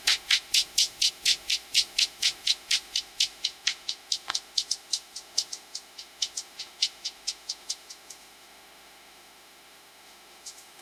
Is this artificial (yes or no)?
yes